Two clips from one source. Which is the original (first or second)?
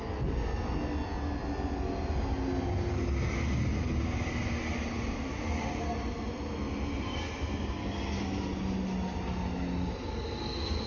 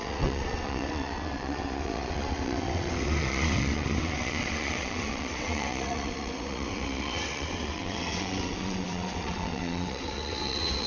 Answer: first